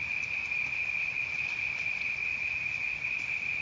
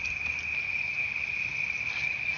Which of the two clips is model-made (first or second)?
first